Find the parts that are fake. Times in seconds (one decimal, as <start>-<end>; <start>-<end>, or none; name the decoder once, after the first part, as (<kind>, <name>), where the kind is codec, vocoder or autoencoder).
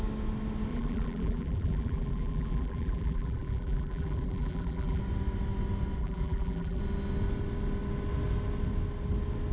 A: 0.7-5.0 (vocoder, BigVGAN v2); 6.0-6.8